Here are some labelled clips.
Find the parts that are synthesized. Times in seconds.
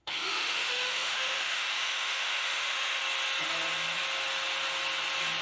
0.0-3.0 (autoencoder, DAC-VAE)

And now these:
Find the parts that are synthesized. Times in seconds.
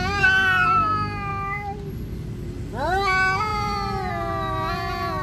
none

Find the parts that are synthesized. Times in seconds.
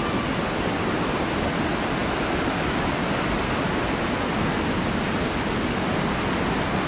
none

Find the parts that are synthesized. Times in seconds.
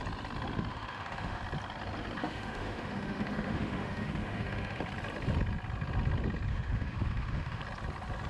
0.7-1.4 (autoencoder, DAC-VAE); 2.2-4.8; 6.5-7.6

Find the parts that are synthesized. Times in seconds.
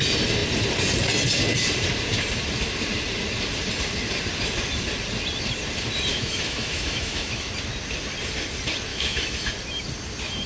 6.1-7.5 (autoencoder, DAC-VAE); 8.9-9.5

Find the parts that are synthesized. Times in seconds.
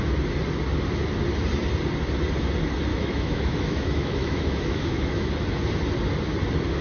2.9-5.3 (autoencoder, DAC-VAE)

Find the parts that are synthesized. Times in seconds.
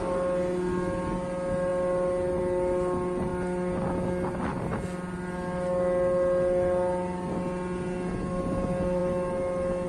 none